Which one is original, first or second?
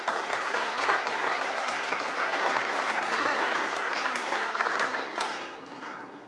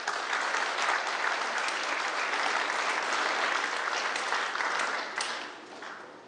second